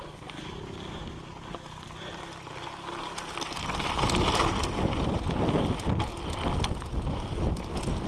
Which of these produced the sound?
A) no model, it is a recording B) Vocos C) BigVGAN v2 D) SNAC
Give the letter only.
A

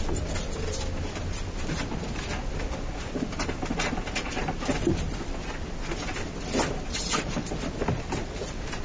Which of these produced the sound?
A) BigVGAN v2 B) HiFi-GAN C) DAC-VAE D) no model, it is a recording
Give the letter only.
D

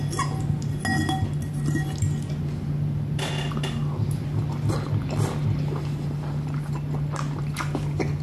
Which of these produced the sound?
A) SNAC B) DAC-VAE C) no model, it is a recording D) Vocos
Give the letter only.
C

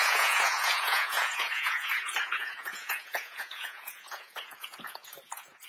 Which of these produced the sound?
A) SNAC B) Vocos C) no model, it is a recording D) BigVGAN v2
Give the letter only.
B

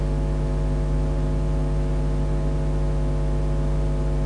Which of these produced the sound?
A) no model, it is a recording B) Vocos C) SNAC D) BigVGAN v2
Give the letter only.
A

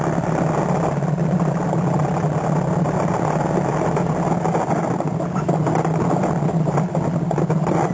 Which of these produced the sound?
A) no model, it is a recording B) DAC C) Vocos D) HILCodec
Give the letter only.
A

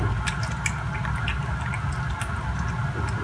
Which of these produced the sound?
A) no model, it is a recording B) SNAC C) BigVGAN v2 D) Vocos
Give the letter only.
A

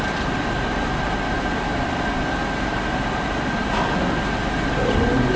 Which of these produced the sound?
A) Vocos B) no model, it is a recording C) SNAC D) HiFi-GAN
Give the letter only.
B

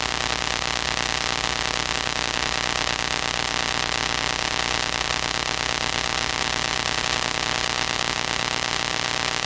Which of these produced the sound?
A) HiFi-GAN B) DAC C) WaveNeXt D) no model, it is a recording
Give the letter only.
D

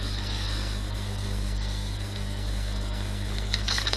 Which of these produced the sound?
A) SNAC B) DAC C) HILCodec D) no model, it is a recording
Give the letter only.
A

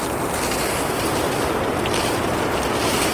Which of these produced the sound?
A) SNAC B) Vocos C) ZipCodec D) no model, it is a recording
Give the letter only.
D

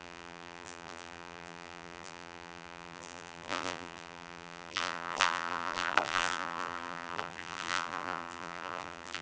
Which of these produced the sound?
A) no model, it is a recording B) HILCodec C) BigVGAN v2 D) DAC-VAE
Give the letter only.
C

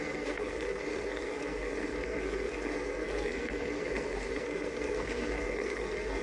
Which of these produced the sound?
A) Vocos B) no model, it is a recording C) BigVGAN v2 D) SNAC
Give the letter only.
D